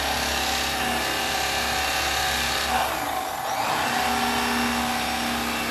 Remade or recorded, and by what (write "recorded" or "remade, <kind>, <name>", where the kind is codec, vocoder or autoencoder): recorded